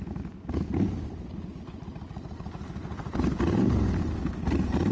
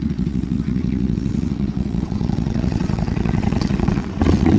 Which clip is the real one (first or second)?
first